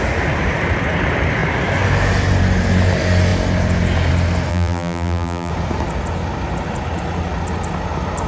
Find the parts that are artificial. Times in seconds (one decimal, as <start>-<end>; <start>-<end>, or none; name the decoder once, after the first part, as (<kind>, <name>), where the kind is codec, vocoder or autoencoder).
4.5-5.5 (vocoder, BigVGAN v2)